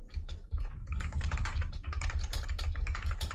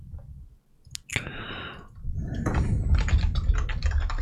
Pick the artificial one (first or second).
first